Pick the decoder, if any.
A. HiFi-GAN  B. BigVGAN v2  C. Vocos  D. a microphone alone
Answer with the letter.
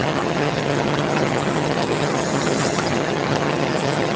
A